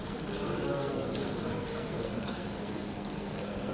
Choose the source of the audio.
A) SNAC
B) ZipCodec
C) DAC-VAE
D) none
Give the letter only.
A